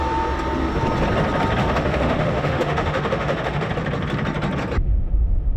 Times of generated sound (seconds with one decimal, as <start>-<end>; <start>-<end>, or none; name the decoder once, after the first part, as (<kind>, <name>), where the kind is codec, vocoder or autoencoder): 1.6-3.7 (autoencoder, DAC-VAE); 4.8-5.6